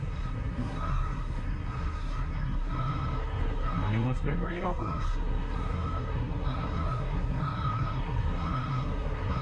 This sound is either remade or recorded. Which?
remade